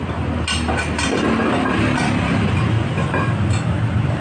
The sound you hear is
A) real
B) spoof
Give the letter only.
A